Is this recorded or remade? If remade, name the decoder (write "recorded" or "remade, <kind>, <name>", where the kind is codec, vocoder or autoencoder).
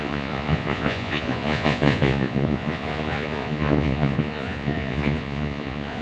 remade, vocoder, Vocos